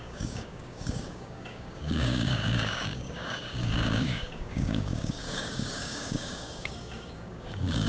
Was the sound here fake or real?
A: fake